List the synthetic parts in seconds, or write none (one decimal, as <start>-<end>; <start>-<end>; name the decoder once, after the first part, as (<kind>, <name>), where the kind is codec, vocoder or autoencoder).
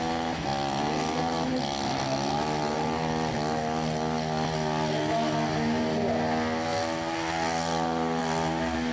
none